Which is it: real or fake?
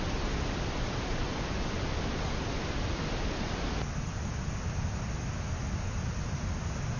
real